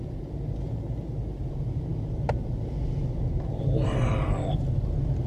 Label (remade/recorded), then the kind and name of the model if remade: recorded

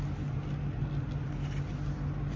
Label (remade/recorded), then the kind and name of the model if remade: recorded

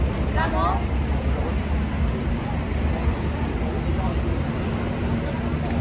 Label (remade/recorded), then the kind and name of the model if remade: recorded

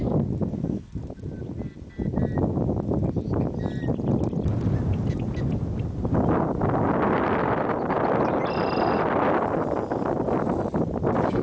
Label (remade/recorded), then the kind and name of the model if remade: recorded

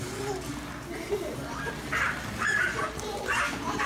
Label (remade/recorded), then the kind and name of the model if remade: remade, vocoder, BigVGAN v2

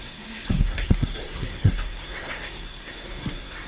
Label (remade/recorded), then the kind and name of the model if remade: remade, codec, SNAC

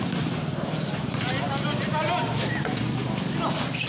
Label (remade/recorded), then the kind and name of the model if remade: remade, vocoder, BigVGAN v2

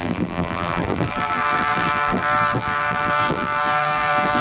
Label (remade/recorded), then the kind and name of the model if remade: remade, vocoder, BigVGAN v2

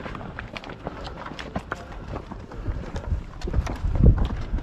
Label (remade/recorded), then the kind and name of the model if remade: remade, vocoder, BigVGAN v2